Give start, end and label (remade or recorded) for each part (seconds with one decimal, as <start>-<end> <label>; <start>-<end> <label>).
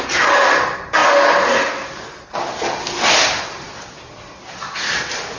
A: 0.0-5.4 recorded